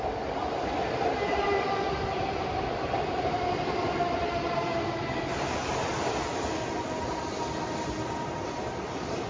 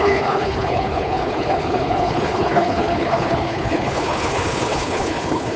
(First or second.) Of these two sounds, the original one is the first